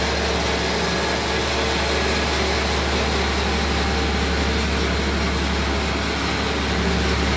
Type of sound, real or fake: real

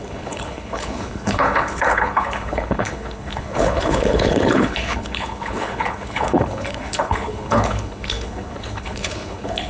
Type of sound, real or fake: fake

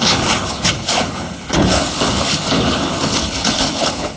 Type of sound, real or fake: fake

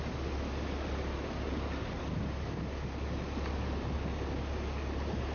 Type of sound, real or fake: real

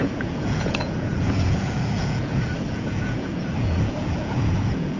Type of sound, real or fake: fake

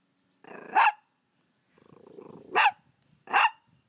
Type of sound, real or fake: real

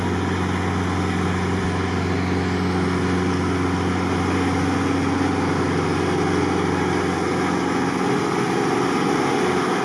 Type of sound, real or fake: real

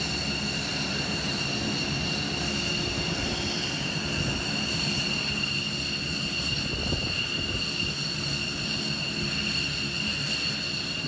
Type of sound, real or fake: real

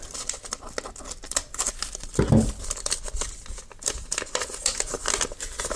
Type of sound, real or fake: real